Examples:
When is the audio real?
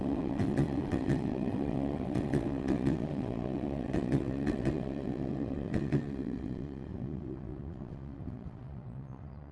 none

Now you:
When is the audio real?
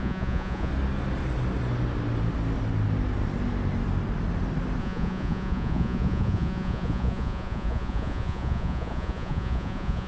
0.7-4.8